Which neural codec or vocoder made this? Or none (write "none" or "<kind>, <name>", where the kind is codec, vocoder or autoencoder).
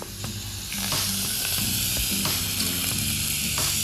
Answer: none